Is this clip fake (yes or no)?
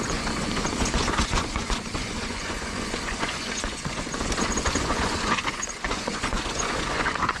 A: yes